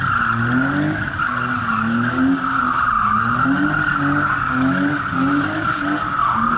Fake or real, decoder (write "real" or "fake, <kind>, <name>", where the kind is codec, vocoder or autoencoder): real